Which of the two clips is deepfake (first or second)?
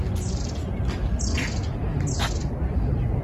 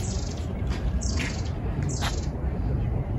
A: second